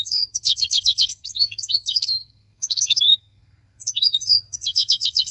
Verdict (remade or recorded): remade